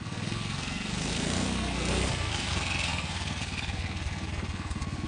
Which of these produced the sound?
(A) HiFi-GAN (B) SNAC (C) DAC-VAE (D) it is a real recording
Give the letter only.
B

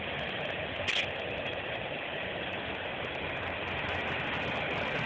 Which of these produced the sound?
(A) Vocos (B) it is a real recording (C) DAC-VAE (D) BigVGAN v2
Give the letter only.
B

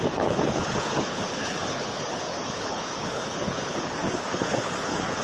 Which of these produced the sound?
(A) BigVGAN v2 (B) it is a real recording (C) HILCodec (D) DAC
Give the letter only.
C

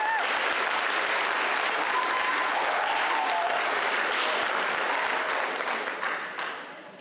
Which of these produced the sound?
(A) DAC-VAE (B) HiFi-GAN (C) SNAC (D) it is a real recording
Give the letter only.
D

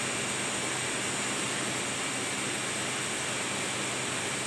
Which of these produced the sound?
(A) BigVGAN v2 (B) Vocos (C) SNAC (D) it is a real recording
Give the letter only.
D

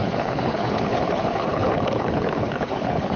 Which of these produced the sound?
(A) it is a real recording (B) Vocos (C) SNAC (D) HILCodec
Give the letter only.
D